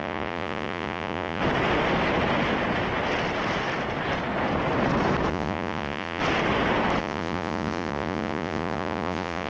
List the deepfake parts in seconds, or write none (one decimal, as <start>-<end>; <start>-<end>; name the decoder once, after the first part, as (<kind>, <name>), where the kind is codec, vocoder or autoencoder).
0.0-1.4 (vocoder, Vocos); 5.3-6.2; 7.0-9.5